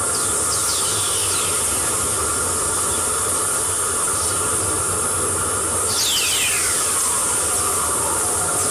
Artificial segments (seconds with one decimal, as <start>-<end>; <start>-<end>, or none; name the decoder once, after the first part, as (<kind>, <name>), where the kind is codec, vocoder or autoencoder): none